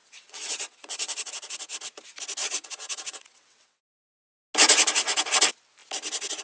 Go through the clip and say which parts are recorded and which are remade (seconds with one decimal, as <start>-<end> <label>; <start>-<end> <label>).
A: 0.0-1.3 remade; 1.3-2.4 recorded; 2.4-3.8 remade; 3.8-6.4 recorded